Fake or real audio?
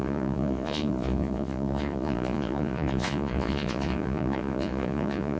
fake